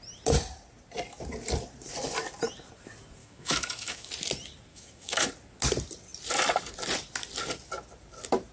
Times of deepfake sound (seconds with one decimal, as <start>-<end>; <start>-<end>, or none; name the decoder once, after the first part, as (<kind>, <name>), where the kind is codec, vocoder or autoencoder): 3.2-4.1 (autoencoder, DAC-VAE); 4.7-5.3